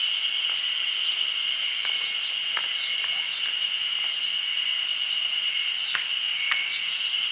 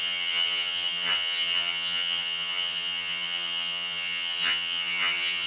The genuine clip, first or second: first